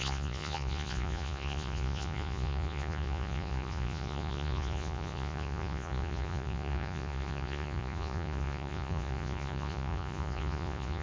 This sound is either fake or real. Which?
fake